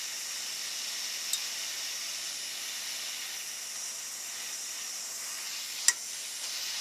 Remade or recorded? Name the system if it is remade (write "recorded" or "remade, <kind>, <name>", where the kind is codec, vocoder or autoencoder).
recorded